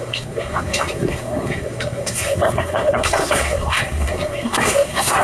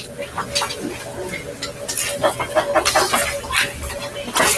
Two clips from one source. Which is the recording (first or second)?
second